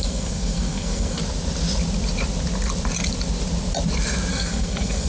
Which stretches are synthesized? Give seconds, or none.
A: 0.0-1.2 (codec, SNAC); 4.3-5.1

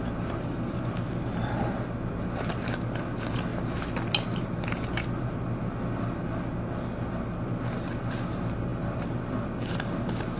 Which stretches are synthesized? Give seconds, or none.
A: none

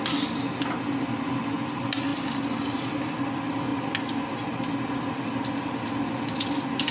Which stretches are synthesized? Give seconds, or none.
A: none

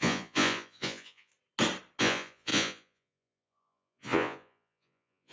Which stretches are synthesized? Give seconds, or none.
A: 0.0-1.3 (vocoder, Vocos); 2.0-5.3